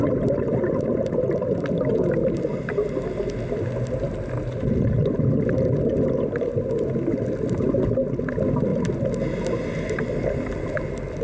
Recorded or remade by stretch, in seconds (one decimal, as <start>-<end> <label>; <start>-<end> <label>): 0.0-11.2 recorded